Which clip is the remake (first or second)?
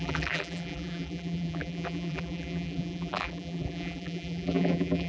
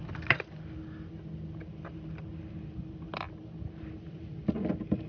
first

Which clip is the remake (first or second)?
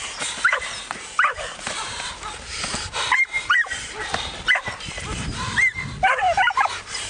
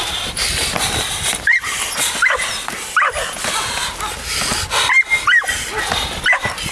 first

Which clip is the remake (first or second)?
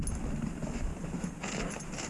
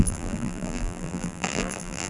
second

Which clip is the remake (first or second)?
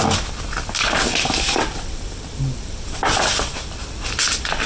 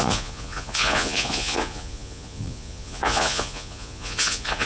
second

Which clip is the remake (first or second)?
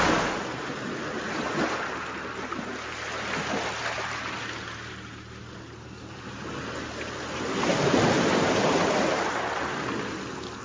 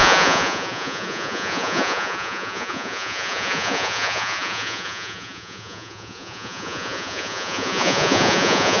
second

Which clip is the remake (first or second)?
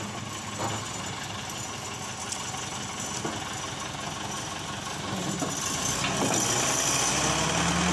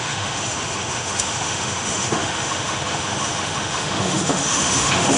second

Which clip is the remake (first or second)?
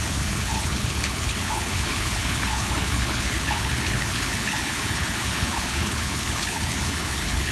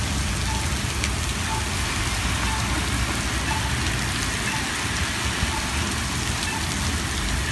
first